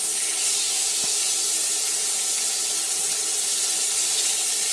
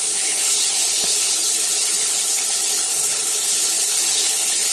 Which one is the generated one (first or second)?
second